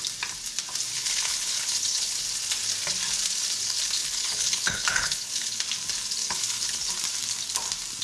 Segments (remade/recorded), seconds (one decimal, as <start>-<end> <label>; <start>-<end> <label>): 0.0-0.9 recorded; 0.9-2.2 remade; 2.2-4.0 recorded; 4.0-5.6 remade; 5.6-6.2 recorded; 6.2-6.9 remade; 6.9-8.0 recorded